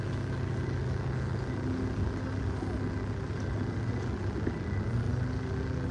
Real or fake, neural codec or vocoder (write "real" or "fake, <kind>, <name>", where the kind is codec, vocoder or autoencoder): real